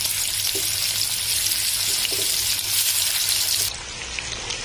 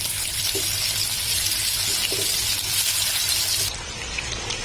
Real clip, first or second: first